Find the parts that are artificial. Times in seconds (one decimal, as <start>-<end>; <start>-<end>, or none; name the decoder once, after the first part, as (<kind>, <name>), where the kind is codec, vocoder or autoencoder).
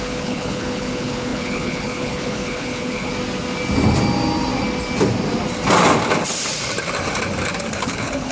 0.0-3.1 (codec, HILCodec); 7.7-8.3